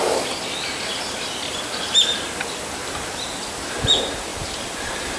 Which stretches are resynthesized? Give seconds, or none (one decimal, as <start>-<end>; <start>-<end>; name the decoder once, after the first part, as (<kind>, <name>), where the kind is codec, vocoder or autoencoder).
4.3-5.2 (vocoder, BigVGAN v2)